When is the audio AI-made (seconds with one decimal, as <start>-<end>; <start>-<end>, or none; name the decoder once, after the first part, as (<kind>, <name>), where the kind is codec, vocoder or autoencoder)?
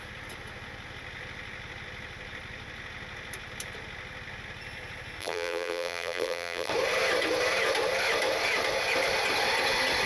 5.2-6.7 (vocoder, BigVGAN v2)